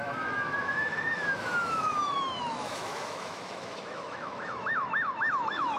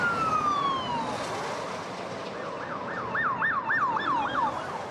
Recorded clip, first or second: second